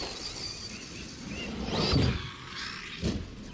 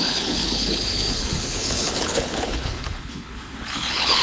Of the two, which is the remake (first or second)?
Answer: second